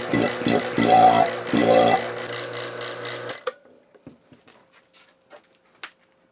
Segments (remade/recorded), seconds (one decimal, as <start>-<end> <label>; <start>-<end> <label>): 0.0-6.3 recorded